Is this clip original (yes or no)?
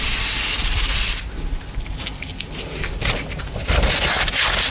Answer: yes